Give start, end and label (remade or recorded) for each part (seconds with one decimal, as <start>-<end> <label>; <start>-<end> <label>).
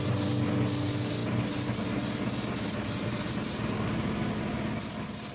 0.0-5.3 recorded